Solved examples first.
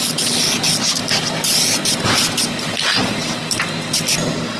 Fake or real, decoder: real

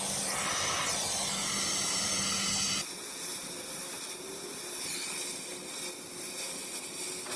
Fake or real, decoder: real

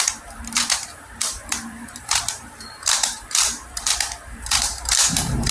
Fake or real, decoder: fake, vocoder, BigVGAN v2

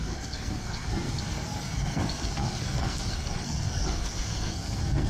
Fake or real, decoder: fake, codec, SNAC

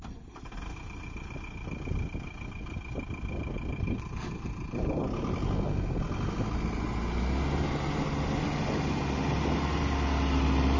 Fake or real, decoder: real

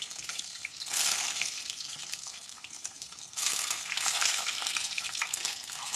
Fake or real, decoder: fake, codec, SNAC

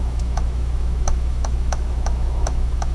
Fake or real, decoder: fake, autoencoder, DAC-VAE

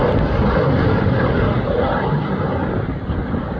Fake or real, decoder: real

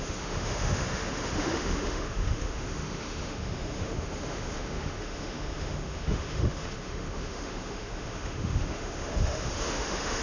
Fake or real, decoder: fake, autoencoder, DAC-VAE